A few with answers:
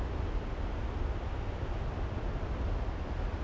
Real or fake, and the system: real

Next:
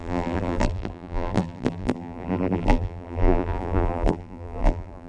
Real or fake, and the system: fake, vocoder, BigVGAN v2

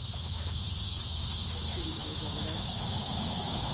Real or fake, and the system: fake, autoencoder, DAC-VAE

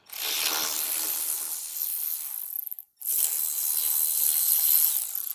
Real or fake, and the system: real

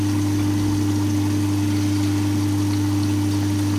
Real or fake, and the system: real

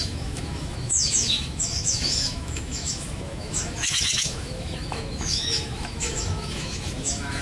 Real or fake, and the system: fake, autoencoder, DAC-VAE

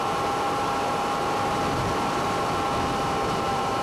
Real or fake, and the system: fake, vocoder, BigVGAN v2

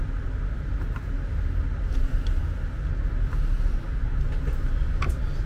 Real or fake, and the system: real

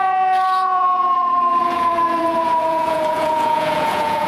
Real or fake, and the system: fake, vocoder, Vocos